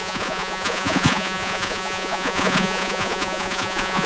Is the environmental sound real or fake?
fake